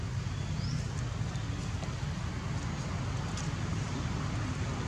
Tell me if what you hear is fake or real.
real